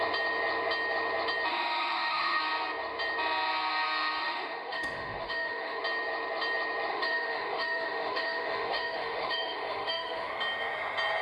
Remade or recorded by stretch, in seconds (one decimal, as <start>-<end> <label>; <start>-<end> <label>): 0.0-1.5 recorded; 1.5-2.4 remade; 2.4-4.2 recorded; 4.2-5.8 remade; 5.8-6.9 recorded; 6.9-10.3 remade; 10.3-11.2 recorded

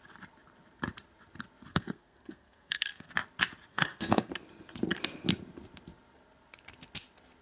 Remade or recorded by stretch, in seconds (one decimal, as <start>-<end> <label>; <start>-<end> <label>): 0.0-1.7 recorded; 1.7-3.1 remade; 3.1-3.7 recorded; 3.7-4.3 remade; 4.3-7.4 recorded

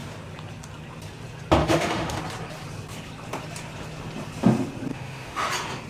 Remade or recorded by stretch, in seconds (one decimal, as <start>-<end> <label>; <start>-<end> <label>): 0.0-1.6 recorded; 1.6-2.2 remade; 2.2-4.9 recorded; 4.9-5.5 remade; 5.5-5.9 recorded

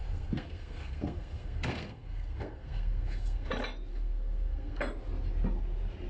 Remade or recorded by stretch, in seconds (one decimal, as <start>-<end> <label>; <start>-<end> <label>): 0.0-3.5 remade; 3.5-3.9 recorded; 3.9-4.8 remade; 4.8-6.1 recorded